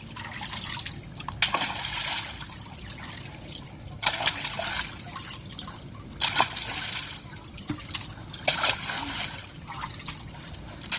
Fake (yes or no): no